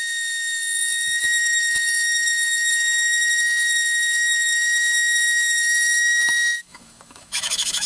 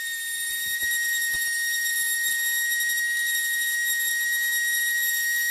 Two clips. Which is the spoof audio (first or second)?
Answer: first